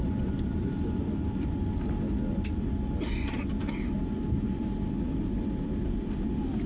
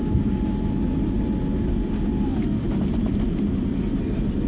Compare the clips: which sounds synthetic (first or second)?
first